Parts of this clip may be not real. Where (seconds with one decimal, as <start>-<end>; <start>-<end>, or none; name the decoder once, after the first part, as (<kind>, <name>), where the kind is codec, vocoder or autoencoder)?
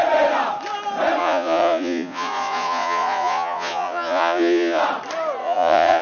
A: 1.2-4.8 (vocoder, Vocos); 5.4-6.0